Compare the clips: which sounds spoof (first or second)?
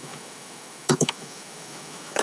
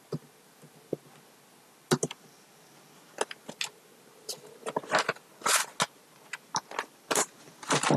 first